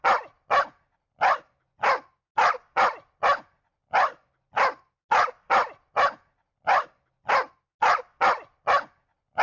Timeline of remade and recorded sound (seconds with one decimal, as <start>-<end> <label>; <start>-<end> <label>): 0.0-9.4 recorded